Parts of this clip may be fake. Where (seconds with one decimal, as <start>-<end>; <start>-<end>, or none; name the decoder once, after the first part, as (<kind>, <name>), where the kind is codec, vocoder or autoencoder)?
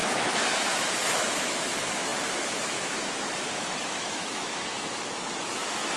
0.0-6.0 (autoencoder, DAC-VAE)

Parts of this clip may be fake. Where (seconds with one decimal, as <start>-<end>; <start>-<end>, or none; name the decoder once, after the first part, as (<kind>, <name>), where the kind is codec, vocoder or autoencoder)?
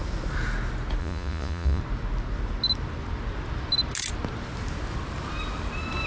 1.0-1.8 (vocoder, Vocos)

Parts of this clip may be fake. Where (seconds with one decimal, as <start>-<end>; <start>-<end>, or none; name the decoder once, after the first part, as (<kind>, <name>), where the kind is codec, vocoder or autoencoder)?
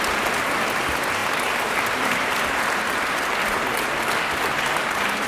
1.2-2.6 (vocoder, BigVGAN v2)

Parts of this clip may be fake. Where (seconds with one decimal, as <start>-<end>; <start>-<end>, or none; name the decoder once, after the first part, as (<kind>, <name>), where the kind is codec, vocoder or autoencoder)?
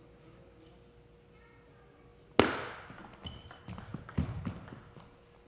none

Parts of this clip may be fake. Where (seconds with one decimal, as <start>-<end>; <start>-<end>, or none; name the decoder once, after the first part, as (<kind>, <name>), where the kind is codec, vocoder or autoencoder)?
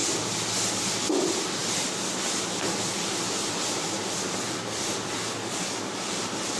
none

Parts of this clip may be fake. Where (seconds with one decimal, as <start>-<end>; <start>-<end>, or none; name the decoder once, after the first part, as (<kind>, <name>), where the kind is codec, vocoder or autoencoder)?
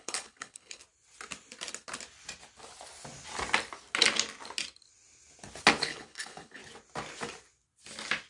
0.0-0.8 (codec, HILCodec); 5.8-6.6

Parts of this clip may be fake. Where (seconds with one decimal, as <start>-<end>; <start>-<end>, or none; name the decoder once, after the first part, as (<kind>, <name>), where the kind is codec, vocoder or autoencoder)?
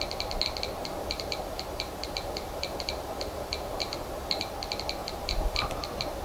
0.8-4.5 (vocoder, BigVGAN v2); 5.0-5.7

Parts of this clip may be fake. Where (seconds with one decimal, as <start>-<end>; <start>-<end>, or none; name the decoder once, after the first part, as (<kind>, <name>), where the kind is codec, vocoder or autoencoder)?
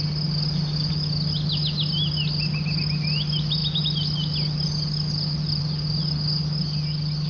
none